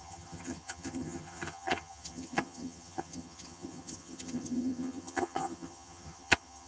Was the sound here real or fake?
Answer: fake